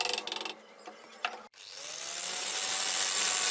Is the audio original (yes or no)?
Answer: yes